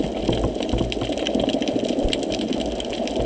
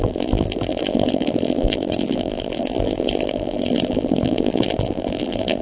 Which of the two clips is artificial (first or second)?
second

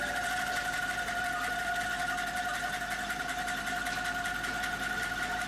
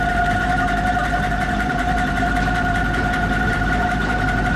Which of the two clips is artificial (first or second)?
second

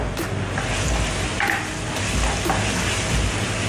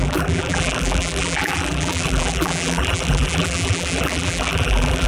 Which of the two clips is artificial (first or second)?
second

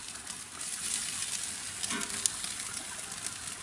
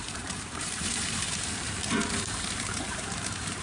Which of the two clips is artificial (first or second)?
second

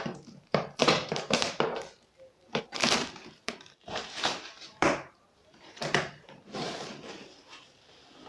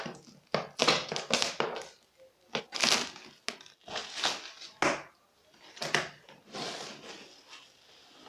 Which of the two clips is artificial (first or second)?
first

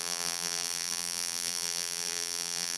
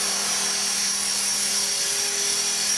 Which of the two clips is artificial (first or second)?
first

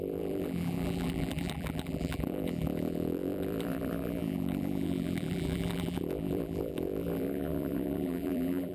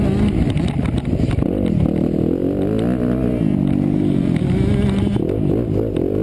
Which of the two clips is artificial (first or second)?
first